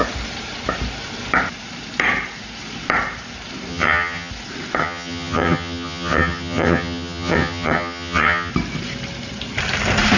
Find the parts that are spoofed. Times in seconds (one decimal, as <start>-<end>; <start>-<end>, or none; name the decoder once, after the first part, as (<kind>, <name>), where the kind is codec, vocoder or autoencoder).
3.7-4.3 (vocoder, HiFi-GAN); 4.8-8.5